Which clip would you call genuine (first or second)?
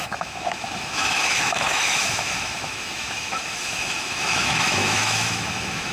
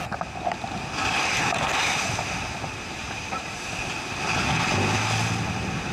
second